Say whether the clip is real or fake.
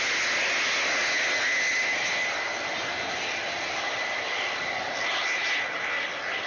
real